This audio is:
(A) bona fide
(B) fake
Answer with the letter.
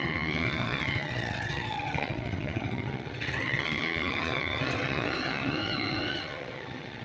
B